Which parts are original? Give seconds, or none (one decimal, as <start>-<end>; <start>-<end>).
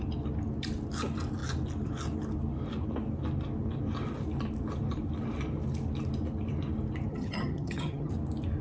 0.0-7.1; 8.1-8.6